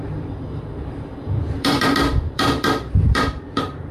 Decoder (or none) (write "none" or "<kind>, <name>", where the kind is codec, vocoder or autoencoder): vocoder, BigVGAN v2